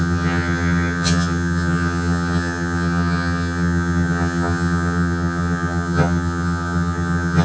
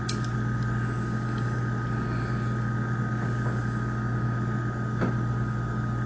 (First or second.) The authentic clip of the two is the second